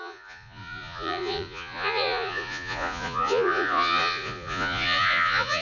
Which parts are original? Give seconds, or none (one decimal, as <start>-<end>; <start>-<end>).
none